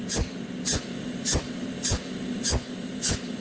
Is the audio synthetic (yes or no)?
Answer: no